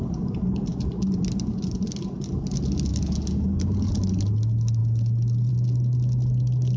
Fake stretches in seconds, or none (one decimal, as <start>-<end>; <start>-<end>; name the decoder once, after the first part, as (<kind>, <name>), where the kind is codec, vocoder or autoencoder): none